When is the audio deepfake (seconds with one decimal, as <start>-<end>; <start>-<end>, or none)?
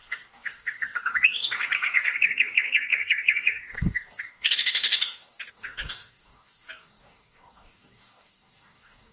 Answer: 0.0-9.1